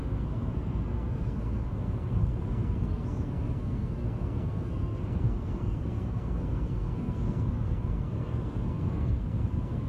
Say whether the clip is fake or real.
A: fake